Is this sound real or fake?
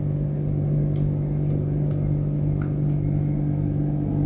real